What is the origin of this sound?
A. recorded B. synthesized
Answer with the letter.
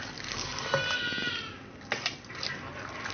A